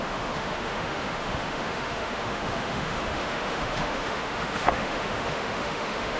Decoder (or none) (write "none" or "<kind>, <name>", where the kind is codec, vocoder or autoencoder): autoencoder, DAC-VAE